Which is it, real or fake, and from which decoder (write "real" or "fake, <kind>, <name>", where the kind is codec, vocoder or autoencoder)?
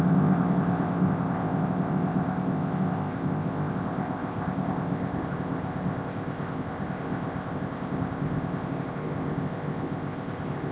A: fake, codec, ZipCodec